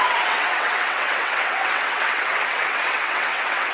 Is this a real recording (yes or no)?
no